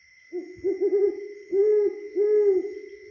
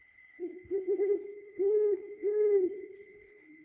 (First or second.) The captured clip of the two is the first